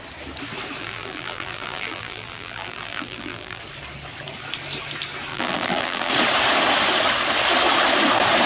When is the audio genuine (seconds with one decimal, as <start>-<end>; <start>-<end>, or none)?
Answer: 0.0-0.8; 3.6-5.3; 6.1-8.5